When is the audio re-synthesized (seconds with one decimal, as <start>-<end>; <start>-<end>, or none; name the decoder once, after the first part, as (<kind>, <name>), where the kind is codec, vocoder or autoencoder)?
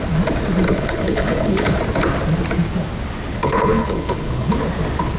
0.7-1.7 (codec, HILCodec); 3.3-4.5